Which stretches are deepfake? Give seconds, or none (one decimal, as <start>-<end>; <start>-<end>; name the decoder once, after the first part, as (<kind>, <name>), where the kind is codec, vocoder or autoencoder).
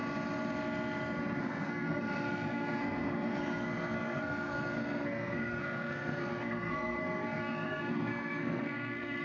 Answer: 1.4-9.2 (codec, SNAC)